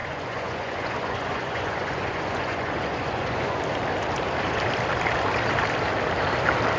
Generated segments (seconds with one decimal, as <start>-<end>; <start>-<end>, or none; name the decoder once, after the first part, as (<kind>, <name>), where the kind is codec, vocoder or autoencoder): 0.0-3.6 (vocoder, Vocos)